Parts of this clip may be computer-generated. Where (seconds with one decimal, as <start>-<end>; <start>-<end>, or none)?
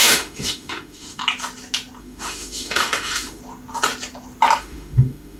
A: 0.0-1.2; 2.0-3.4; 4.6-5.4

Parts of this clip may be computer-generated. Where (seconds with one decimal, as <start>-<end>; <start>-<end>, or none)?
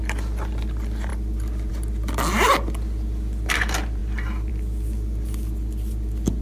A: none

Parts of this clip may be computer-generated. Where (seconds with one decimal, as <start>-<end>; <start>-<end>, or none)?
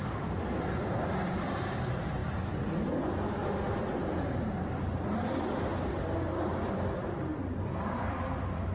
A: 0.0-2.2; 4.3-5.7; 6.5-8.7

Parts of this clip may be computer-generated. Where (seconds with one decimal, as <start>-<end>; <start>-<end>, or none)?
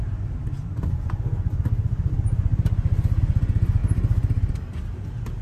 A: 3.8-4.5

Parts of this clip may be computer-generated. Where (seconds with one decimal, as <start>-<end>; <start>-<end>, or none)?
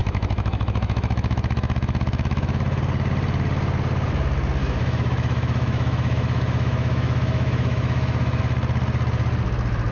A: 0.0-2.8; 4.6-8.4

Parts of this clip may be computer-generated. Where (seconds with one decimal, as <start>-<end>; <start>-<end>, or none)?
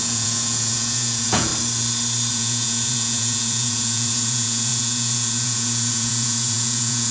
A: 0.0-1.5; 2.3-7.1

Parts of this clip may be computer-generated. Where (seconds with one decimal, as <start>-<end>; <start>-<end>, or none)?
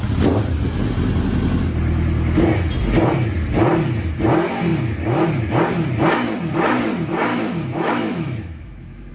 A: 7.3-9.1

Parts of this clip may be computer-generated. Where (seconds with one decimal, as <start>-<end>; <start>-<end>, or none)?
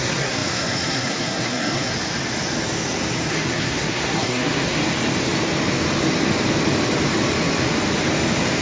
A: 0.0-1.9; 3.3-4.8